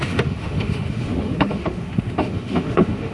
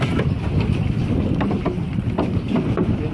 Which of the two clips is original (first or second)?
second